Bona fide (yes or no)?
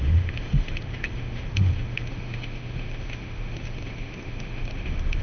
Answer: no